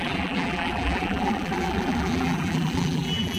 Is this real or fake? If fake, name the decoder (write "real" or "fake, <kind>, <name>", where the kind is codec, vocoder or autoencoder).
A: fake, vocoder, BigVGAN v2